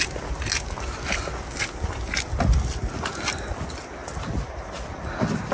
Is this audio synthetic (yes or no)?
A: no